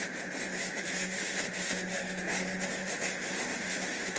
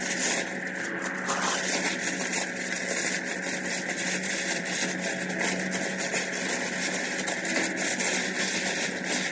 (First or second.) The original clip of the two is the second